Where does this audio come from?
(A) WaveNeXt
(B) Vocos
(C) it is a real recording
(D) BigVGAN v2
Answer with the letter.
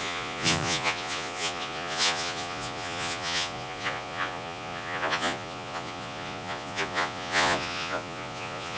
B